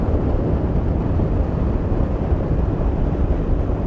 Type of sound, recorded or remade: recorded